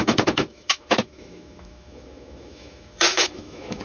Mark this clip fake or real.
fake